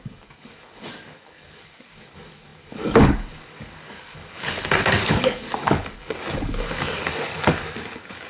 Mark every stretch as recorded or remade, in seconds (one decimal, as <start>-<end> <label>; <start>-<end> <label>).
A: 0.0-8.3 remade